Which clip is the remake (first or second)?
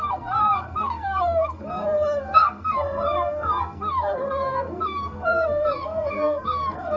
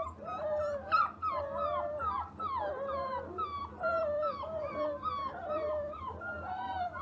first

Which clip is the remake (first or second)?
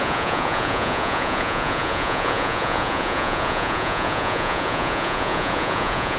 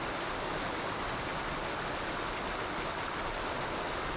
first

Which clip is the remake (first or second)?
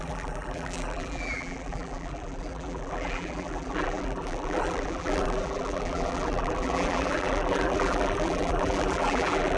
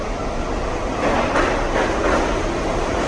first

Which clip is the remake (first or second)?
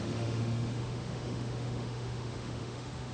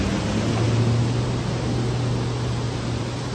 first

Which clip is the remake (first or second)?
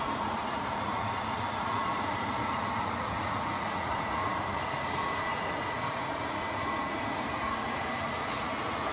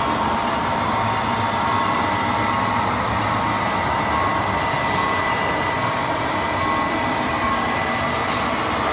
first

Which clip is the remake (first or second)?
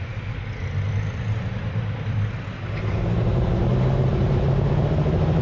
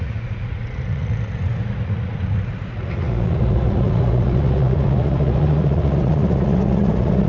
second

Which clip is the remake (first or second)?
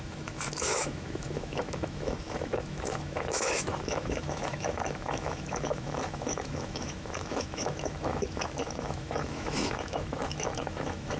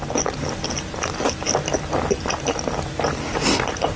first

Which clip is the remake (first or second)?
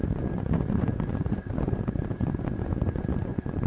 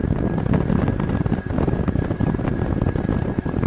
first